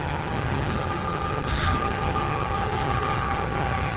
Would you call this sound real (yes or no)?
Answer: no